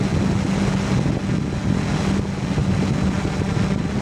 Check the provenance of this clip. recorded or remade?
recorded